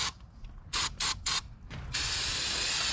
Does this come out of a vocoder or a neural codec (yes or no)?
no